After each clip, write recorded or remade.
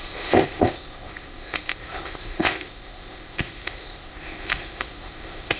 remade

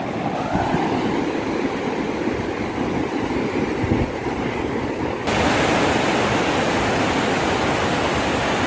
recorded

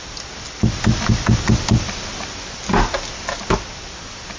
recorded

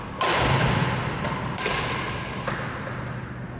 recorded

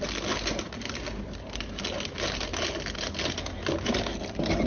recorded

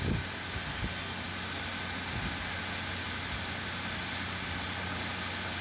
recorded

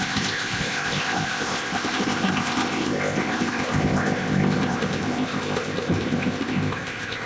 remade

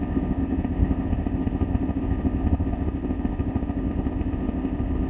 remade